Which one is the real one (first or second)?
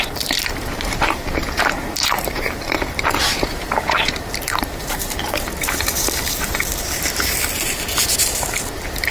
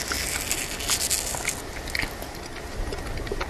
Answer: second